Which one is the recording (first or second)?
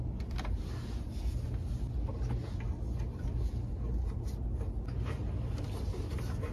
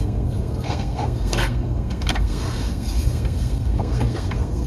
first